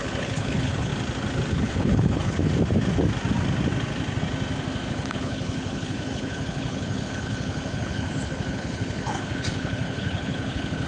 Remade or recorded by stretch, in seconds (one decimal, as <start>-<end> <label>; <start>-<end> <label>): 0.0-0.9 remade; 0.9-1.5 recorded; 1.5-2.4 remade; 2.4-4.9 recorded; 4.9-10.9 remade